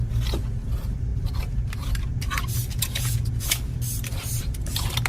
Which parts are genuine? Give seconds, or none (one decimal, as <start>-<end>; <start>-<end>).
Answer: 0.0-2.7; 3.4-5.1